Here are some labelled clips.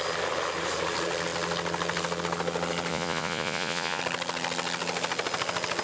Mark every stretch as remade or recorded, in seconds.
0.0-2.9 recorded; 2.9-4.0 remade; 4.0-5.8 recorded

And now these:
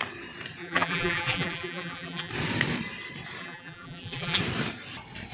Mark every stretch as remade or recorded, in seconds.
0.0-0.6 recorded; 0.6-2.3 remade; 2.3-3.4 recorded; 3.4-4.4 remade; 4.4-5.3 recorded

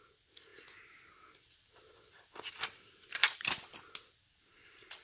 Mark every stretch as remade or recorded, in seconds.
0.0-5.0 recorded

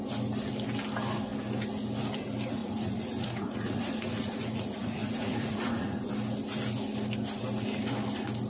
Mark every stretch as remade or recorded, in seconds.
0.0-2.6 recorded; 2.6-6.1 remade; 6.1-8.5 recorded